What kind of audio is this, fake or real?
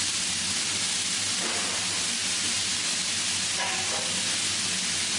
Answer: real